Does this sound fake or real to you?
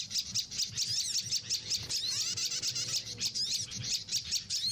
real